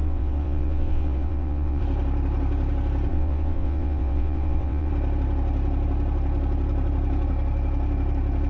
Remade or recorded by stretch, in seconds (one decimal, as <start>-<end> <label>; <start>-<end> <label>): 0.0-1.8 remade; 1.8-3.1 recorded; 3.1-4.9 remade; 4.9-8.5 recorded